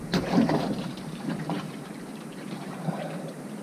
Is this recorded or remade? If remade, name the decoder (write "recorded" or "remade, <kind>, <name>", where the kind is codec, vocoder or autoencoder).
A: remade, vocoder, BigVGAN v2